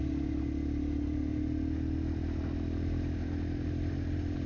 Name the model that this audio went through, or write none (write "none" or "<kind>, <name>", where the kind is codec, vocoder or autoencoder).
none